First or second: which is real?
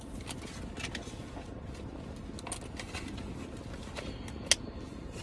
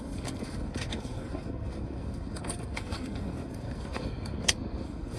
first